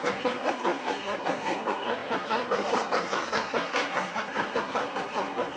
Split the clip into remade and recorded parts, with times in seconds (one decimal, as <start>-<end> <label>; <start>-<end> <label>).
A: 0.0-5.6 remade